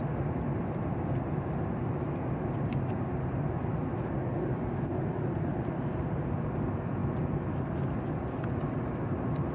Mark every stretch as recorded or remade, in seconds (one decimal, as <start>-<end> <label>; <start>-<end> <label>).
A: 0.0-9.5 recorded